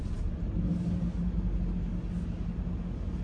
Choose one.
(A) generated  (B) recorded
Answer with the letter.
B